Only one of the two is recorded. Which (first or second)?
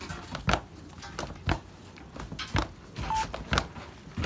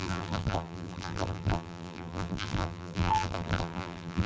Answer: first